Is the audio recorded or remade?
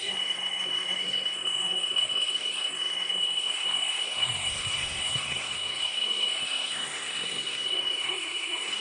remade